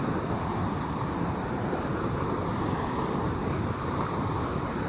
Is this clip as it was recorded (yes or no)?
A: yes